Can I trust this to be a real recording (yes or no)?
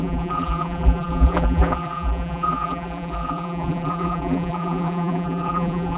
no